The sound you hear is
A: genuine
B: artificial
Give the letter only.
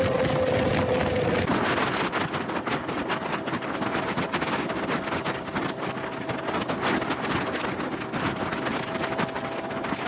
A